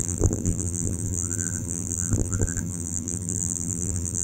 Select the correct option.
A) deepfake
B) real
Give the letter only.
A